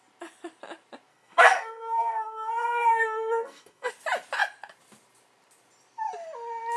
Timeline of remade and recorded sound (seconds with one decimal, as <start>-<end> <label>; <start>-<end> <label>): 0.0-1.1 recorded; 1.1-3.9 remade; 3.9-6.8 recorded